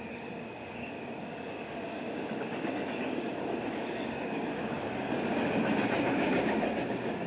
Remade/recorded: remade